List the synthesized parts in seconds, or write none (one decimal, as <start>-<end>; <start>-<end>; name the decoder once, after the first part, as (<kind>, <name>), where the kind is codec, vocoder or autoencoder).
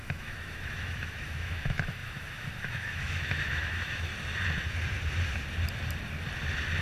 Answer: 0.0-4.1 (autoencoder, DAC-VAE)